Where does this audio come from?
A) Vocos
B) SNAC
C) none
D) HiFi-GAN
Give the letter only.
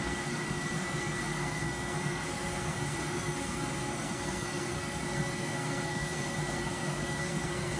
B